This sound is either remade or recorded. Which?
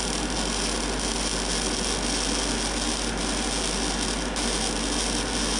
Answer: recorded